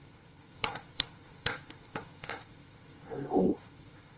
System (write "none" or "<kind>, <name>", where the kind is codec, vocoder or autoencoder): codec, SNAC